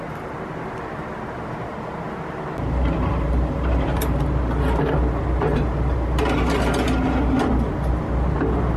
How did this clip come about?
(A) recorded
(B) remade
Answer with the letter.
A